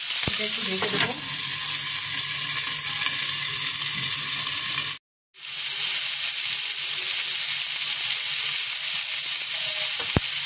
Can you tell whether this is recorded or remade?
recorded